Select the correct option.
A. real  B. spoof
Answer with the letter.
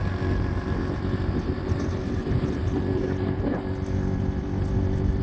A